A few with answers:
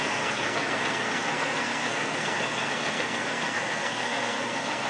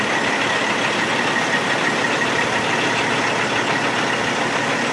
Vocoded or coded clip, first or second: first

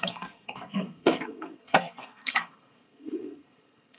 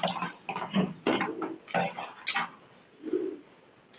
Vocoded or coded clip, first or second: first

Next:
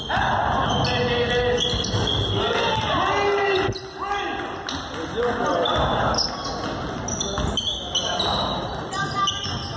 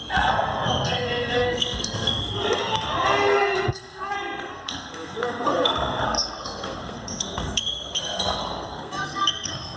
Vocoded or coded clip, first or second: second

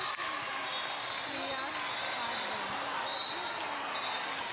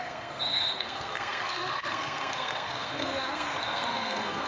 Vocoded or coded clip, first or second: second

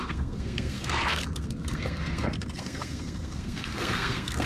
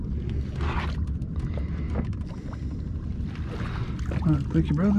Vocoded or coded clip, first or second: first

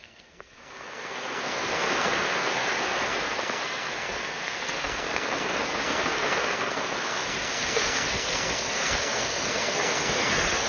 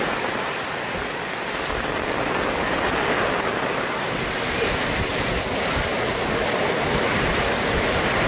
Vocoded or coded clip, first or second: first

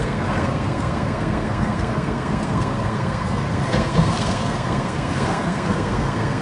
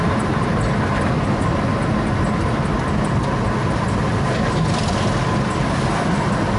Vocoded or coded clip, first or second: first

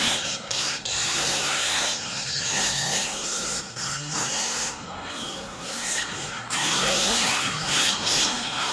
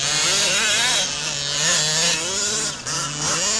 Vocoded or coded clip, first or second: first